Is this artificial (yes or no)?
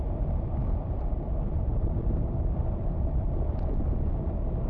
no